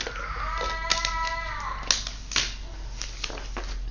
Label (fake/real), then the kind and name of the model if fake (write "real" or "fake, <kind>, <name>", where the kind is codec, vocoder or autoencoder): real